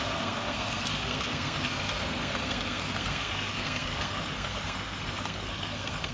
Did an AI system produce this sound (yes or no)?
yes